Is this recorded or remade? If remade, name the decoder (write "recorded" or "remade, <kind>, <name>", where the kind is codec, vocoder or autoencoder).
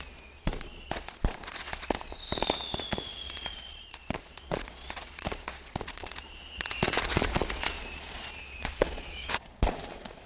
remade, vocoder, Vocos